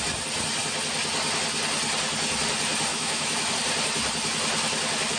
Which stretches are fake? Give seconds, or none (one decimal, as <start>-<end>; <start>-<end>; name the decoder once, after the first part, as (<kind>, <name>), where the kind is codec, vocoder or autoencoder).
2.9-3.5 (autoencoder, DAC-VAE)